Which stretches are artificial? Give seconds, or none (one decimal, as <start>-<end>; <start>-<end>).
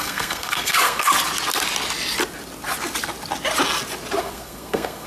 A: 0.0-1.1; 4.2-5.1